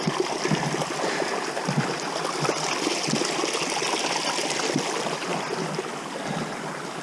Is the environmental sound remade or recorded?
recorded